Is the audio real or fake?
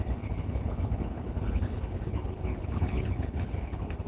fake